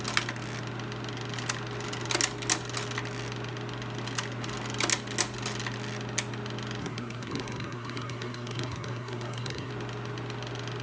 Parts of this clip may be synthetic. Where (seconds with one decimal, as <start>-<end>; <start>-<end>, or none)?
6.8-9.7